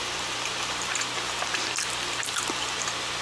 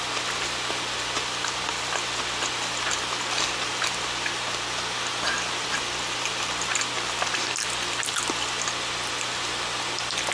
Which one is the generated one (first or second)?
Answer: first